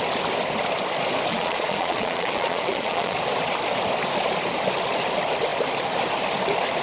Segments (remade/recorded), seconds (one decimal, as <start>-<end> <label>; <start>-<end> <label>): 0.0-1.3 recorded; 1.3-3.2 remade; 3.2-6.8 recorded